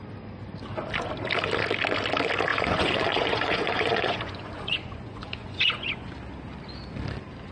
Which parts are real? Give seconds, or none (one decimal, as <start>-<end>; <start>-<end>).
0.0-2.5; 6.1-7.5